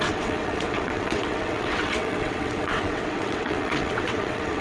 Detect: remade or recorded remade